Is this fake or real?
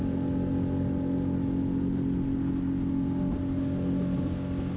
real